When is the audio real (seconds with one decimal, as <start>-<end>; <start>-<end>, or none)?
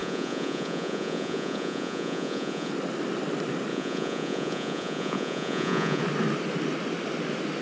2.7-3.7; 6.0-7.6